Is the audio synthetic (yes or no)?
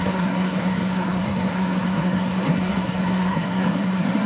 yes